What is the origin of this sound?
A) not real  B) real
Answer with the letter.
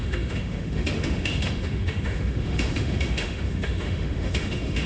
A